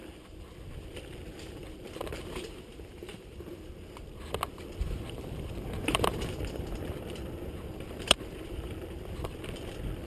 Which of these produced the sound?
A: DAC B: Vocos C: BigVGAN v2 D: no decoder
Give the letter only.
C